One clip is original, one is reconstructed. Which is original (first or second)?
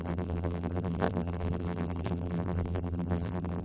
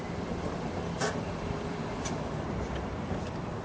second